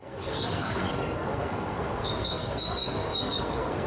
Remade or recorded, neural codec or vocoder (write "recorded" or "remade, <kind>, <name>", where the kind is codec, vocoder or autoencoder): remade, codec, SNAC